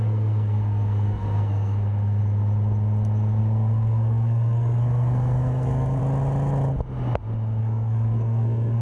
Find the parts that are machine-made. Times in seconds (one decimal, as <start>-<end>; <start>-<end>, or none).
0.0-2.2; 3.4-6.0; 7.6-8.8